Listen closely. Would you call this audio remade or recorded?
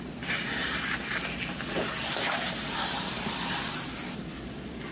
recorded